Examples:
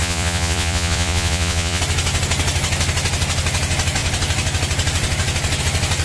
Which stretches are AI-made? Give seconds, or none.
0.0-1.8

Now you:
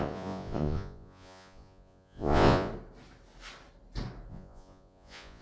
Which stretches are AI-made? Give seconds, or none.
0.0-2.7; 4.3-5.4

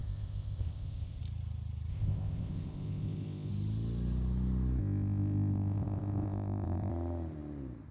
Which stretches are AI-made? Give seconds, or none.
0.0-1.2; 1.9-3.5; 4.8-6.9

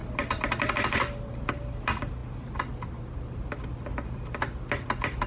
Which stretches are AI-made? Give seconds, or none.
none

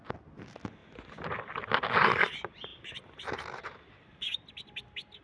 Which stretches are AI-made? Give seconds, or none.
none

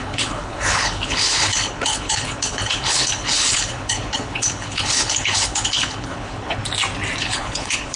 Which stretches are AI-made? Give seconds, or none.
0.0-6.6; 7.2-8.0